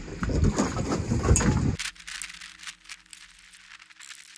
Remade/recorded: recorded